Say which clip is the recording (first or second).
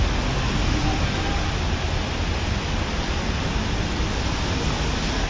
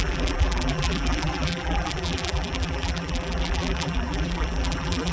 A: first